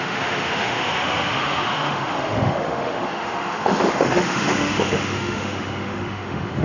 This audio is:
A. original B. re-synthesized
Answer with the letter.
B